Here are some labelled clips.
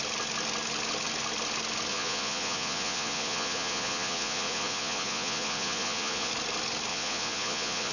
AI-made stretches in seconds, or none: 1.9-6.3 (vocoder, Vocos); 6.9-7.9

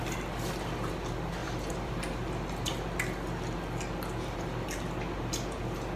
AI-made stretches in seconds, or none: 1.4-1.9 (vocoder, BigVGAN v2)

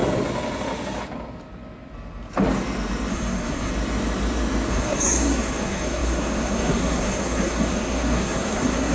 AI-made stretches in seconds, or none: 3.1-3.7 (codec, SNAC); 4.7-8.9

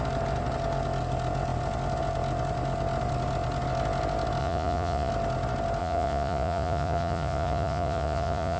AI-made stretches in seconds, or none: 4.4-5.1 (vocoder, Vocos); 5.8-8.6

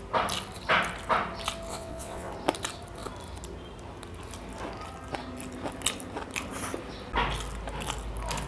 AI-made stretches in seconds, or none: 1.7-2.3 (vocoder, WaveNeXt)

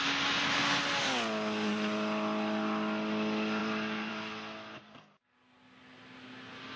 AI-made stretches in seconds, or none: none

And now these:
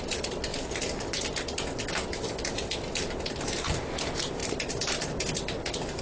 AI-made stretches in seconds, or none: none

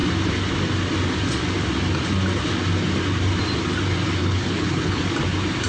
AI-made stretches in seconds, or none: 4.2-5.0 (codec, HILCodec)